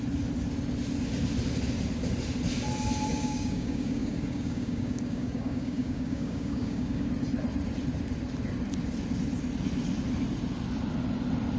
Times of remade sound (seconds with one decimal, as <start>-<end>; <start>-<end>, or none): 3.1-7.1